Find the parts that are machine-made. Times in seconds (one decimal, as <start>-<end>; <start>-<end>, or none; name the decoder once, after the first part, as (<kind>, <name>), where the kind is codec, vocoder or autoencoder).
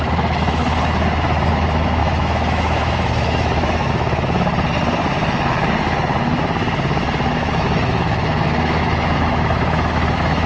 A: 0.0-0.6 (autoencoder, DAC-VAE); 1.5-4.5; 7.3-10.5